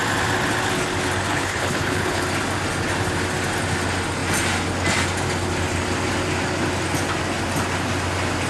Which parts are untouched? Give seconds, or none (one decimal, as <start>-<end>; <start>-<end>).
0.0-1.3; 2.2-8.5